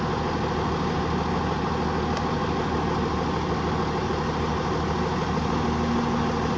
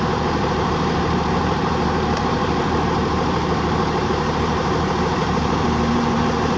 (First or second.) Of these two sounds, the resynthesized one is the second